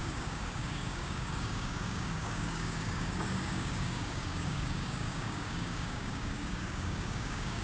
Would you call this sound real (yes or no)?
no